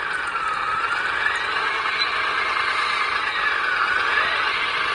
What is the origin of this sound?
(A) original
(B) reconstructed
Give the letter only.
A